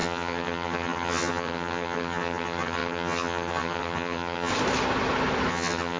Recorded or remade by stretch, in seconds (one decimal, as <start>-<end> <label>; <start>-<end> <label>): 0.0-4.5 remade; 4.5-5.5 recorded; 5.5-6.0 remade